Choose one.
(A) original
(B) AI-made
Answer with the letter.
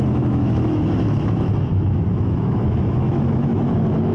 B